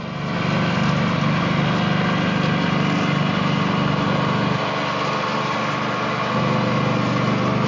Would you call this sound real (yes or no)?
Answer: yes